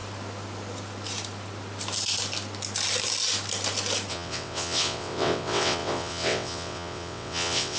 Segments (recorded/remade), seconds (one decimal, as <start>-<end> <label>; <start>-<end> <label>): 0.0-4.1 recorded; 4.1-7.8 remade

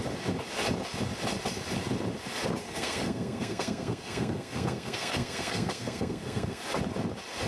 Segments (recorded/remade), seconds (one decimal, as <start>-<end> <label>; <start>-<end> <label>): 0.0-2.6 recorded; 2.6-6.6 remade; 6.6-7.5 recorded

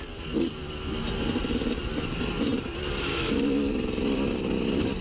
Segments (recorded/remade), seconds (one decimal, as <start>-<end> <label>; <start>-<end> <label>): 0.0-5.0 recorded

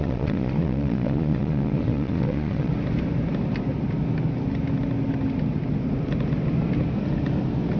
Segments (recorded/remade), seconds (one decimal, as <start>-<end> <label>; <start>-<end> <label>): 0.0-2.7 remade; 2.7-7.8 recorded